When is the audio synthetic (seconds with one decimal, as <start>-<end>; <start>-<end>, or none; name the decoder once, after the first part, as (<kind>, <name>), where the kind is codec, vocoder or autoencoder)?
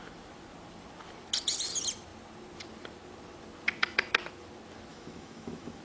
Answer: 4.9-5.8 (autoencoder, DAC-VAE)